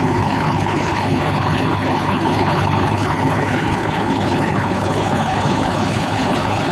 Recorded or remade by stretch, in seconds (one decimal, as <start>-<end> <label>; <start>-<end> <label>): 0.0-6.7 remade